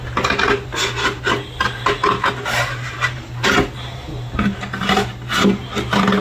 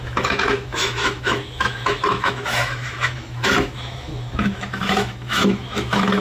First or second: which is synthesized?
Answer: second